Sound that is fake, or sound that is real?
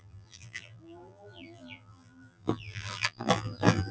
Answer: fake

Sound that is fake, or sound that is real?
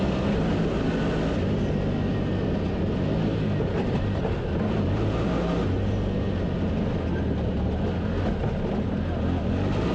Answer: real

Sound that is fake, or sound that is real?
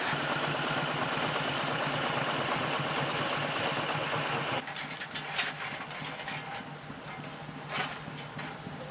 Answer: real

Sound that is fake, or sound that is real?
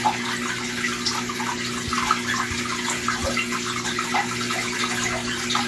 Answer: real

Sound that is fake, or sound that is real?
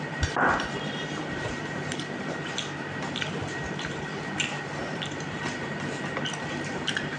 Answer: fake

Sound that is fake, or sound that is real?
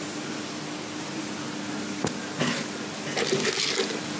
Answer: real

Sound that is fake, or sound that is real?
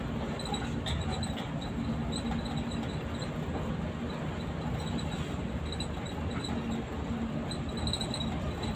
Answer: real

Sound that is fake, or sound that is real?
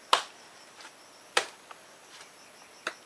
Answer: fake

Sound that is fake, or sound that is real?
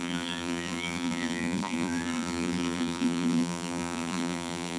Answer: fake